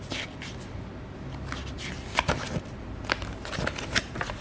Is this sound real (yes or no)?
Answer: yes